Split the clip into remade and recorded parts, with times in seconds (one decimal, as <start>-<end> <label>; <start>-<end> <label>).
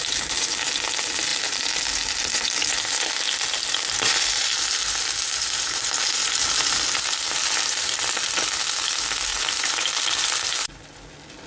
0.0-6.2 recorded; 6.2-8.5 remade; 8.5-9.3 recorded; 9.3-10.8 remade; 10.8-11.5 recorded